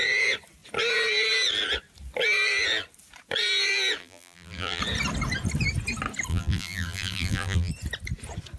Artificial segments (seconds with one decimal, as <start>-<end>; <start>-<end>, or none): 4.0-4.8; 6.3-7.7